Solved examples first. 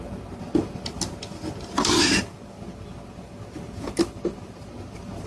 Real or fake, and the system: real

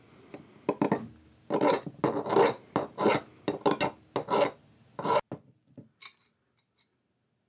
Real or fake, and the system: real